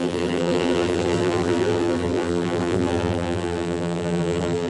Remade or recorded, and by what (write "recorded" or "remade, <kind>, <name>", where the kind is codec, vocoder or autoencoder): remade, vocoder, BigVGAN v2